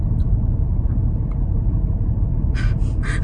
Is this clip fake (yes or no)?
yes